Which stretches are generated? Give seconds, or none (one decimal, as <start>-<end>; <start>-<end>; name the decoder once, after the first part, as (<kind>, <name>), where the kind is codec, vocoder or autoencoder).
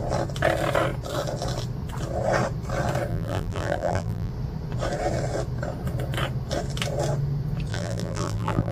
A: 3.1-4.3 (vocoder, BigVGAN v2); 7.7-8.7